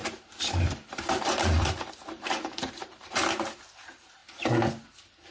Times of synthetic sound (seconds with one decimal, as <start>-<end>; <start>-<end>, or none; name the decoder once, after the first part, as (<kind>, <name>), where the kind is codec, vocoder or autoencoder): 0.0-3.2 (vocoder, BigVGAN v2)

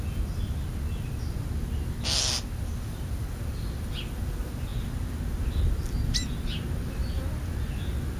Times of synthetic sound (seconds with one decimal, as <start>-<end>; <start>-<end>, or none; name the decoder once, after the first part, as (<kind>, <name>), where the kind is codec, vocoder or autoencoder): none

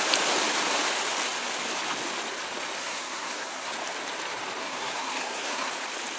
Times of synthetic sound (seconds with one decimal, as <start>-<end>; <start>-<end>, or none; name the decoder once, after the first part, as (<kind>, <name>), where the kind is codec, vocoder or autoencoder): 2.8-3.7 (codec, SNAC); 4.6-5.7

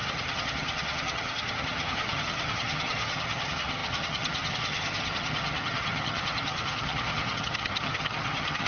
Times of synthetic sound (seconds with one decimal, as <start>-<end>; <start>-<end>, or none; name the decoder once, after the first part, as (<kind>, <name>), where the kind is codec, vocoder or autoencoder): 0.0-8.7 (vocoder, HiFi-GAN)